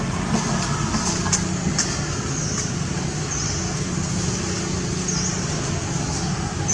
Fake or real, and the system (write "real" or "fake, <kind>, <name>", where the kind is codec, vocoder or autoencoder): real